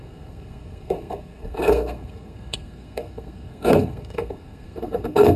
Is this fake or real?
fake